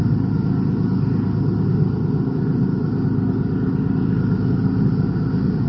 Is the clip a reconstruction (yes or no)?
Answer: no